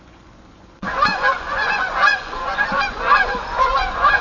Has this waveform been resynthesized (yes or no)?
yes